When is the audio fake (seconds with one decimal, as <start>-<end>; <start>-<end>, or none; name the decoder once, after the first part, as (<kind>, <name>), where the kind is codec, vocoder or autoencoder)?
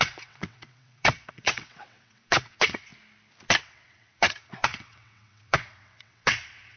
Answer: 0.0-2.9 (vocoder, WaveNeXt); 3.6-6.8